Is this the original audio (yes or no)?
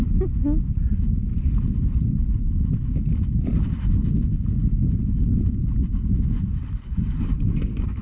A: yes